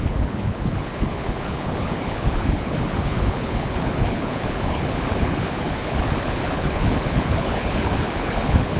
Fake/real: fake